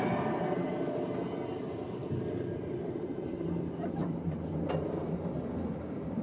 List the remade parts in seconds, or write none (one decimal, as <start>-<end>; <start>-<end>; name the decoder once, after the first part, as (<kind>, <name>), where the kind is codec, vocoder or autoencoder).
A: 0.0-0.7 (vocoder, BigVGAN v2); 1.6-2.0; 2.8-4.0; 5.4-6.2